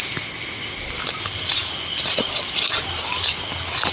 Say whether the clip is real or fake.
real